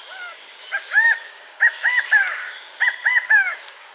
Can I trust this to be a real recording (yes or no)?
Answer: no